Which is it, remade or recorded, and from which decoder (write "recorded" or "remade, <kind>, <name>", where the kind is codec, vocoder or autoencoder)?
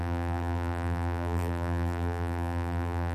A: remade, vocoder, BigVGAN v2